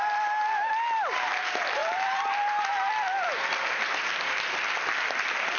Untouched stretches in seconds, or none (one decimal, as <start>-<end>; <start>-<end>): 0.0-1.8; 2.9-5.6